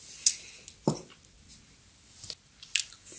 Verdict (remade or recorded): recorded